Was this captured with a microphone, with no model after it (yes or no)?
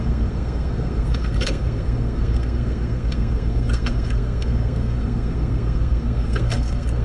no